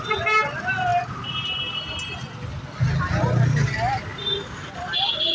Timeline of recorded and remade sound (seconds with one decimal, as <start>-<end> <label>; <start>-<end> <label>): 0.0-5.3 recorded